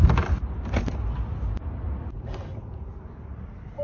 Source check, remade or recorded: recorded